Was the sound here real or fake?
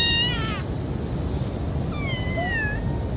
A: real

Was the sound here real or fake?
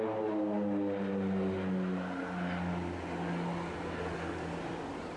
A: real